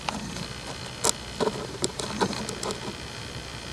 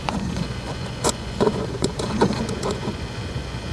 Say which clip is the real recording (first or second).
first